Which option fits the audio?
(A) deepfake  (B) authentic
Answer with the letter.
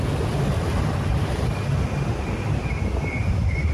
B